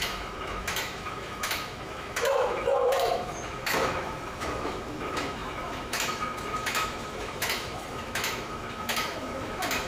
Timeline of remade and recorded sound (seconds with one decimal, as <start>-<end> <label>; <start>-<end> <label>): 0.0-9.9 remade